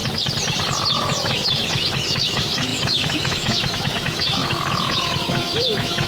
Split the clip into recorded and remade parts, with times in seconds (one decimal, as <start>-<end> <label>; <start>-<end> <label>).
0.0-1.0 recorded; 1.0-6.1 remade